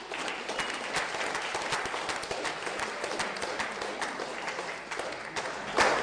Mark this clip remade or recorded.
recorded